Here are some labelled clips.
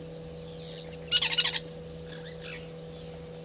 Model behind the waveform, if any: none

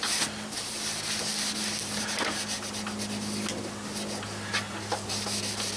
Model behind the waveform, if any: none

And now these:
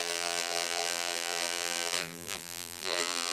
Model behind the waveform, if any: vocoder, BigVGAN v2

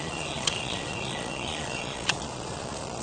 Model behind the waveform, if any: vocoder, Vocos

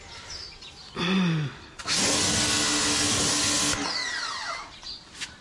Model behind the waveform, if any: none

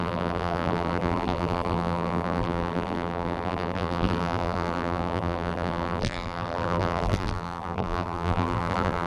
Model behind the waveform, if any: vocoder, BigVGAN v2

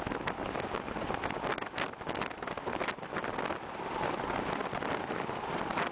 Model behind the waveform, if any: none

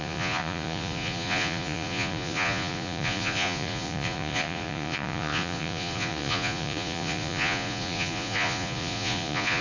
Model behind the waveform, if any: vocoder, Vocos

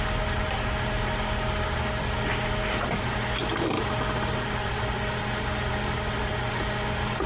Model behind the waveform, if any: none